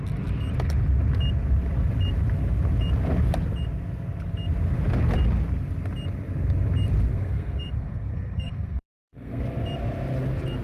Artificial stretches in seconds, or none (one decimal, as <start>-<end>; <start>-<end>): 7.1-9.4